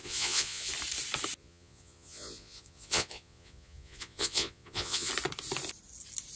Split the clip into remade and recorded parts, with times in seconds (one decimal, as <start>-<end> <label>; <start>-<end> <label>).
0.0-0.7 remade; 0.7-1.4 recorded; 1.4-5.1 remade; 5.1-6.4 recorded